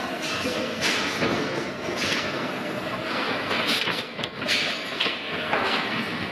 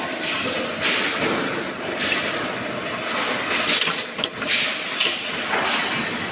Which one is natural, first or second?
second